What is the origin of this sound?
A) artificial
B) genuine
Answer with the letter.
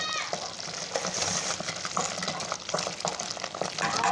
B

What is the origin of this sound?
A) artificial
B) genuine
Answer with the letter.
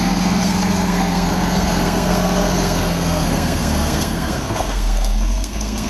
A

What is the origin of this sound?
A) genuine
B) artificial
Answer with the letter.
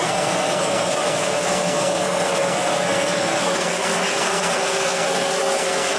B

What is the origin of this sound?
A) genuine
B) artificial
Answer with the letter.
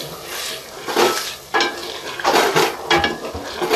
A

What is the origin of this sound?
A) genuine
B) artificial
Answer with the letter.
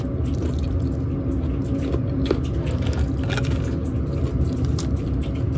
A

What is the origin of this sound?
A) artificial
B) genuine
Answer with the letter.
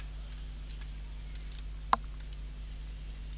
B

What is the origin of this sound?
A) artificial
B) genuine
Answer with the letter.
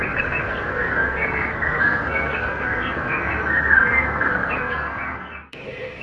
A